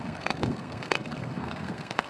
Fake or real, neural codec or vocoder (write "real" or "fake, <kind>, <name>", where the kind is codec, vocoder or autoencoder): fake, codec, SNAC